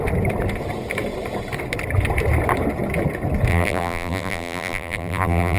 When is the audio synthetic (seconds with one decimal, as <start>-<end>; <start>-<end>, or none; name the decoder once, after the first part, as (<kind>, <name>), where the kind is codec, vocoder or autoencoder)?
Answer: 3.5-5.6 (vocoder, BigVGAN v2)